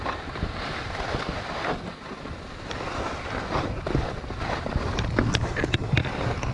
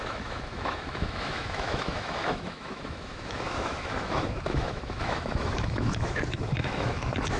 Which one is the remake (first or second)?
second